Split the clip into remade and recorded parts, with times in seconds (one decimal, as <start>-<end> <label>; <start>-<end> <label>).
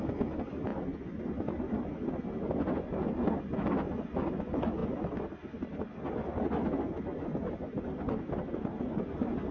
0.0-9.5 recorded